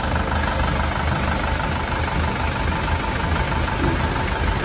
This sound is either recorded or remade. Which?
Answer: recorded